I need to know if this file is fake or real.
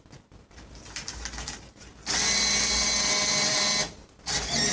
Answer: real